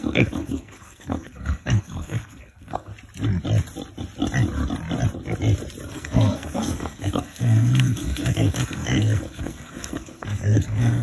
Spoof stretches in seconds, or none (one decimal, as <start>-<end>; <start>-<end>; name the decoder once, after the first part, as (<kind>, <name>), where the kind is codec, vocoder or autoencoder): 0.0-2.9 (codec, SNAC); 5.9-11.0